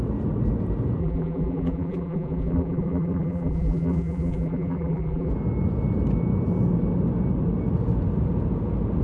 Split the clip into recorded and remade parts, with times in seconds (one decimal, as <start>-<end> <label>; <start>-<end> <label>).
0.0-1.0 recorded; 1.0-5.3 remade; 5.3-9.0 recorded